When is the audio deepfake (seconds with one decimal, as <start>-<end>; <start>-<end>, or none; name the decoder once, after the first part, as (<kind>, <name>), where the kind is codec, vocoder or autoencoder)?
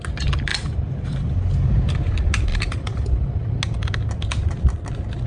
0.5-1.3 (vocoder, BigVGAN v2); 2.5-3.6